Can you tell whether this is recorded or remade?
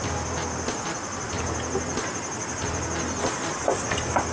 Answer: recorded